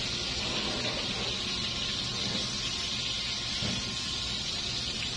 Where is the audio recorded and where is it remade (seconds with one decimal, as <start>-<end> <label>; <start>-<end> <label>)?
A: 0.0-5.2 recorded